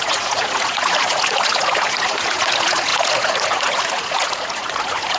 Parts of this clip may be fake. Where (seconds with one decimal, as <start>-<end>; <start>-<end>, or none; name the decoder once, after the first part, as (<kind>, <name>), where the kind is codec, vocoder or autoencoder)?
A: 0.0-5.2 (vocoder, Vocos)